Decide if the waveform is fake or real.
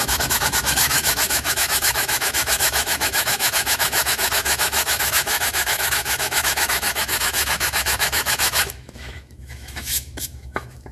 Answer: fake